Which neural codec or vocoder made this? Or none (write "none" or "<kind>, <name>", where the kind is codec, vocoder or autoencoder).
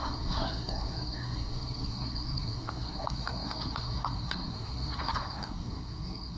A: codec, SNAC